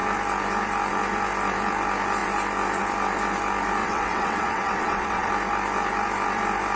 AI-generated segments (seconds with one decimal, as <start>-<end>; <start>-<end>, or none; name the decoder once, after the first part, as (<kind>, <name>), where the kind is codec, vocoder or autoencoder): 3.8-5.3 (vocoder, WaveNeXt)